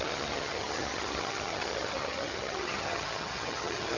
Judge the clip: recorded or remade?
remade